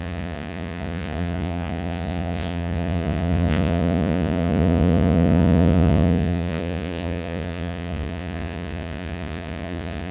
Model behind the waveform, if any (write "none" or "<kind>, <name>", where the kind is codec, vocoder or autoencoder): vocoder, Vocos